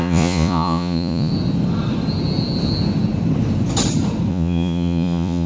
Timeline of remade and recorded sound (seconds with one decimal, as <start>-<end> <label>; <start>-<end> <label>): 0.0-1.3 remade; 1.3-4.3 recorded; 4.3-5.5 remade